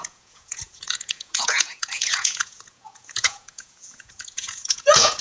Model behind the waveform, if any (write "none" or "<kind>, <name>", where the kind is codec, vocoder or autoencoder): vocoder, Vocos